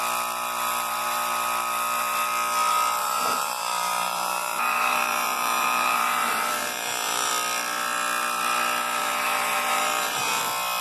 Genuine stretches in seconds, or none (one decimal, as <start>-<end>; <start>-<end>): 0.0-3.0; 7.3-9.0; 10.4-10.8